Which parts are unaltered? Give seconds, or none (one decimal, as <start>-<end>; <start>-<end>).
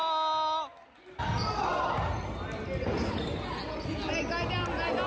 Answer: 0.0-5.1